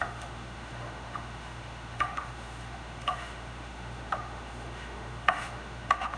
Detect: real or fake fake